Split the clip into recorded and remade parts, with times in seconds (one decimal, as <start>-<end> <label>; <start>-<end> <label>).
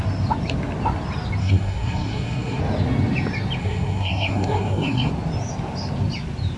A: 0.0-1.4 recorded; 1.4-2.6 remade; 2.6-3.6 recorded; 3.6-5.1 remade; 5.1-6.6 recorded